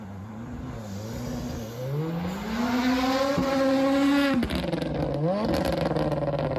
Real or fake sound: real